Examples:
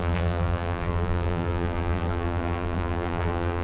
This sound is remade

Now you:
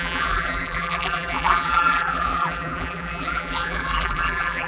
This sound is remade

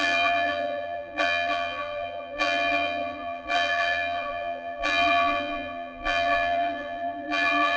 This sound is remade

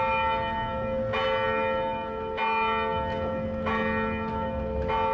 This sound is recorded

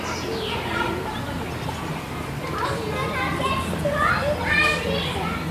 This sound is recorded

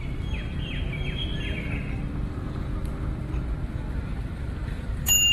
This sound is remade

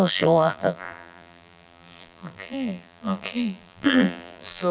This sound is remade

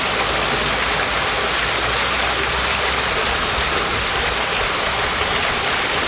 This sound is recorded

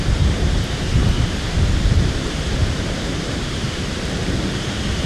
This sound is remade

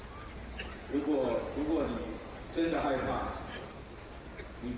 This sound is recorded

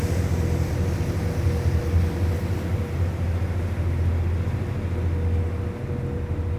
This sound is recorded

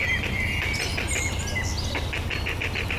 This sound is recorded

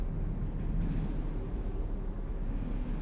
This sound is recorded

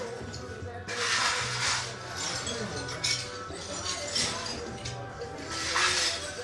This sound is recorded